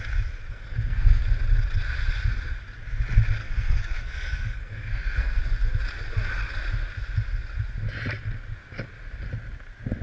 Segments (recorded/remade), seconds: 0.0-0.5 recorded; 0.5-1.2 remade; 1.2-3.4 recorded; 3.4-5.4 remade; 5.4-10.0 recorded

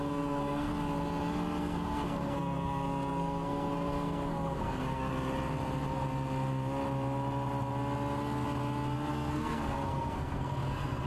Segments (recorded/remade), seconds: 0.0-0.7 remade; 0.7-1.6 recorded; 1.6-5.1 remade; 5.1-9.1 recorded; 9.1-11.1 remade

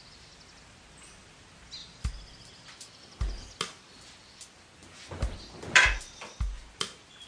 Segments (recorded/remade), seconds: 0.0-7.3 recorded

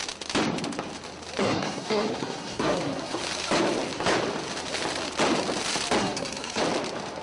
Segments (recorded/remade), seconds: 0.0-1.4 recorded; 1.4-3.2 remade; 3.2-6.0 recorded; 6.0-6.6 remade; 6.6-7.2 recorded

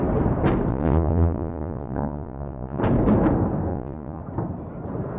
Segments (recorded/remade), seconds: 0.0-0.7 recorded; 0.7-2.8 remade; 2.8-3.7 recorded; 3.7-4.2 remade; 4.2-5.2 recorded

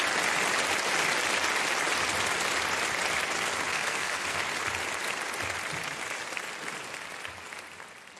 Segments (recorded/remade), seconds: 0.0-3.7 recorded; 3.7-4.4 remade; 4.4-8.2 recorded